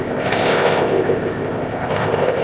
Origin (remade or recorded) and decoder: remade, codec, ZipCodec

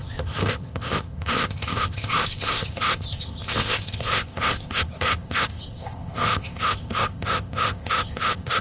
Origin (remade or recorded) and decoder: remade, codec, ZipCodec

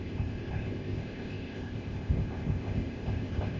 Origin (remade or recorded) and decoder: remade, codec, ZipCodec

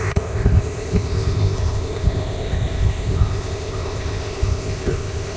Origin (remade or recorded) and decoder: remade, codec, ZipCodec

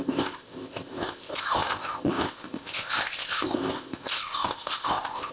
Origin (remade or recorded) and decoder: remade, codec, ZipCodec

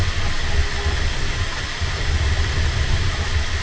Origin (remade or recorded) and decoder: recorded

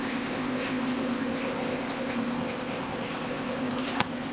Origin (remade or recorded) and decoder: remade, codec, ZipCodec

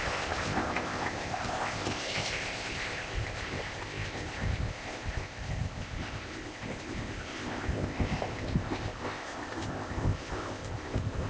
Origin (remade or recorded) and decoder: remade, codec, ZipCodec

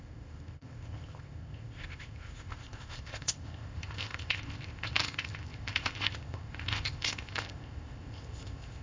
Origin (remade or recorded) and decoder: remade, codec, ZipCodec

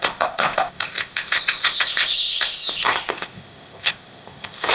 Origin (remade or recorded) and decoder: remade, codec, ZipCodec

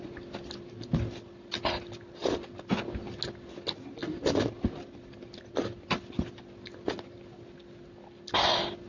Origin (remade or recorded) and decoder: recorded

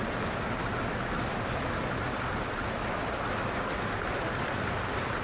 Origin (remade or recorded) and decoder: recorded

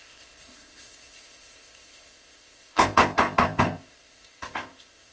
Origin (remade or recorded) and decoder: remade, codec, ZipCodec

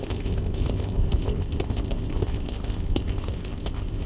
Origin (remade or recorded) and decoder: remade, codec, ZipCodec